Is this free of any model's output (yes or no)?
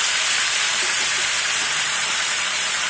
no